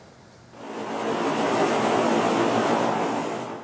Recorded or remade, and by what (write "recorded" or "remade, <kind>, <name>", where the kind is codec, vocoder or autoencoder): recorded